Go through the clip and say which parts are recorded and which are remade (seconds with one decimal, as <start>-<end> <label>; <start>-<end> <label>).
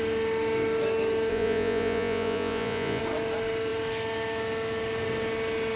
0.0-1.3 recorded; 1.3-3.0 remade; 3.0-5.8 recorded